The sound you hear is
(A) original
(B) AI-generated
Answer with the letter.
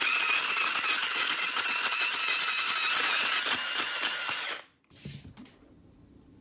A